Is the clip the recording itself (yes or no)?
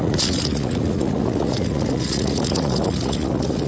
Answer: no